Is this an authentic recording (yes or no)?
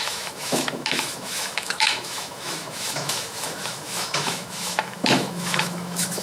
no